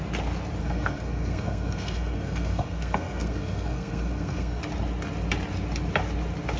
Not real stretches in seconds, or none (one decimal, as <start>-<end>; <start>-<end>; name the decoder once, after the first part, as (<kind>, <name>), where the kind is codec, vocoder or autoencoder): 0.6-4.6 (codec, SNAC)